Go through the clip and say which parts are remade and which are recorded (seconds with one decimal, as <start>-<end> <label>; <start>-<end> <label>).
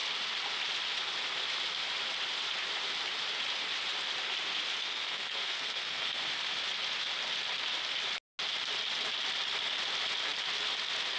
0.0-4.8 recorded; 4.8-6.2 remade; 6.2-11.2 recorded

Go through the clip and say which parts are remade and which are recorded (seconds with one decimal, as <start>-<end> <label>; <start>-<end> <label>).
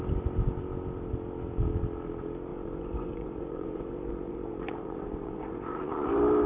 0.0-2.5 recorded; 2.5-6.1 remade; 6.1-6.5 recorded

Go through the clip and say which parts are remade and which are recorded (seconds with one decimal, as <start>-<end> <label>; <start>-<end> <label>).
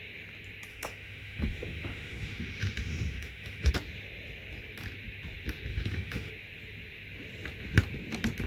0.0-0.7 recorded; 0.7-3.7 remade; 3.7-5.7 recorded; 5.7-6.3 remade; 6.3-8.5 recorded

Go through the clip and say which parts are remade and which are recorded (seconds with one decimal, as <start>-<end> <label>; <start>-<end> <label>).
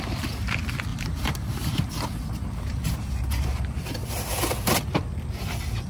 0.0-0.9 recorded; 0.9-4.4 remade; 4.4-5.9 recorded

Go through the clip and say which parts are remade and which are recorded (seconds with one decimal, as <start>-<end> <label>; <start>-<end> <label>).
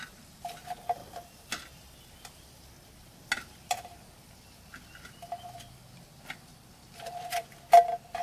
0.0-6.5 recorded; 6.5-7.4 remade; 7.4-8.2 recorded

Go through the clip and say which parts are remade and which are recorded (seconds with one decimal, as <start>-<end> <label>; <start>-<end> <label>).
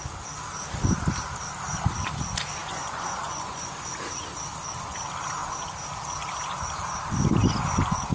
0.0-2.6 recorded; 2.6-3.9 remade; 3.9-8.1 recorded